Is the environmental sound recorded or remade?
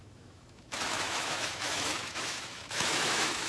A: remade